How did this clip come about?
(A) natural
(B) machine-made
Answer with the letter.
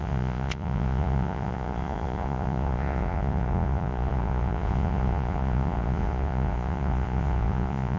B